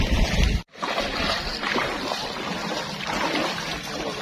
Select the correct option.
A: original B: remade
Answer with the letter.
A